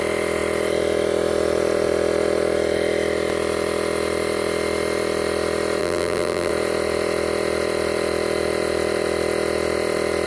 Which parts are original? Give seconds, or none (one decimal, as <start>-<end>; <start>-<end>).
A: 0.0-5.8; 6.5-10.3